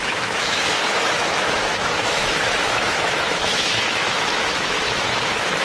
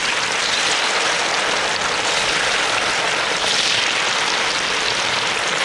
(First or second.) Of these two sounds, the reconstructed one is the first